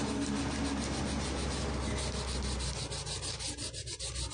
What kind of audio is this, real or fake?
real